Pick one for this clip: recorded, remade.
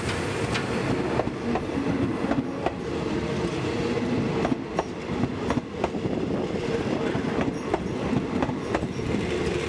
recorded